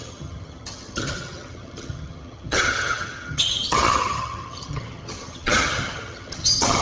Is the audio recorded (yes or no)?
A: no